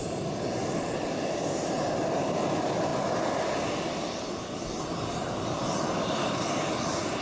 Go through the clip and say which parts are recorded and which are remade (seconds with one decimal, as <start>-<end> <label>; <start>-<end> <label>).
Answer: 0.0-7.2 recorded